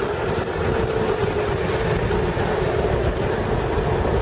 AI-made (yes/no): no